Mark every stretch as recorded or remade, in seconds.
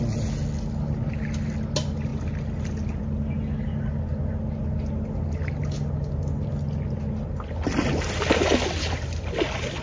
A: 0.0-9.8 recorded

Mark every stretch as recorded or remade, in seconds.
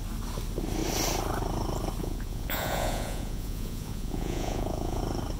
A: 0.0-2.0 recorded; 2.0-5.0 remade; 5.0-5.4 recorded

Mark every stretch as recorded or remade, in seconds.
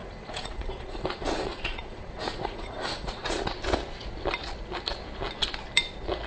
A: 0.0-3.4 remade; 3.4-6.3 recorded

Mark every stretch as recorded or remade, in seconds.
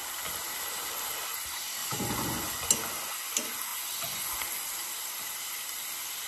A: 0.0-1.8 recorded; 1.8-2.7 remade; 2.7-3.7 recorded; 3.7-4.3 remade; 4.3-6.3 recorded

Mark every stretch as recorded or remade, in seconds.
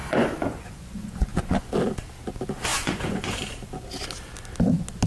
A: 0.0-1.7 remade; 1.7-2.7 recorded; 2.7-3.4 remade; 3.4-5.1 recorded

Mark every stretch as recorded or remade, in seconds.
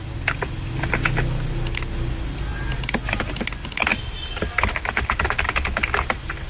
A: 0.0-6.5 recorded